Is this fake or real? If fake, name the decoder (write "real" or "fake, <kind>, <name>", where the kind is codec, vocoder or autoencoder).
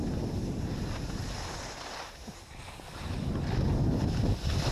real